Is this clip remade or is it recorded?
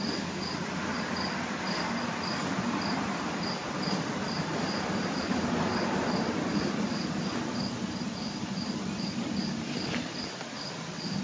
recorded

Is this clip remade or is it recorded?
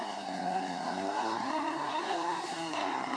remade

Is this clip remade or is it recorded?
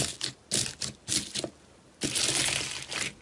recorded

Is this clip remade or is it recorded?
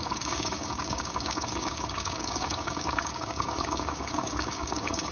remade